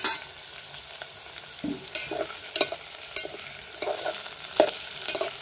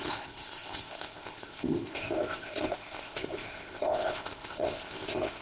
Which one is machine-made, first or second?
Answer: second